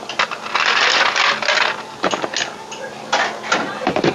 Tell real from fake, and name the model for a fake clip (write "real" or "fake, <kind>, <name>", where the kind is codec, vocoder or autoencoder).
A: real